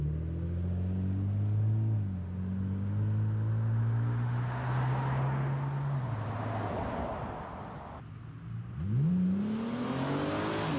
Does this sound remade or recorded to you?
recorded